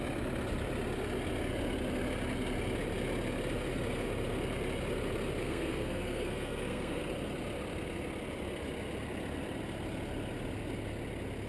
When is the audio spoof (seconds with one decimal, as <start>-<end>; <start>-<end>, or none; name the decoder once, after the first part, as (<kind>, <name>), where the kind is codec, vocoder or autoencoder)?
5.4-7.0 (codec, SNAC)